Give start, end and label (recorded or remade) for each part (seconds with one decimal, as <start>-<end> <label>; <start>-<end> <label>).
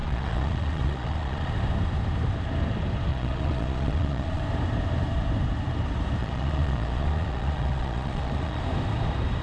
0.0-1.5 remade; 1.5-3.1 recorded; 3.1-4.4 remade; 4.4-6.2 recorded; 6.2-8.6 remade; 8.6-9.4 recorded